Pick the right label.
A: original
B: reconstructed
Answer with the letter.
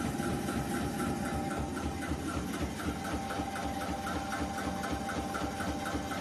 A